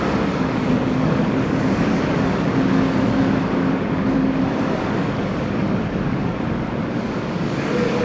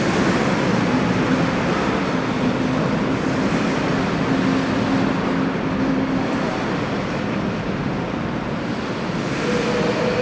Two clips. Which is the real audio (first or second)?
second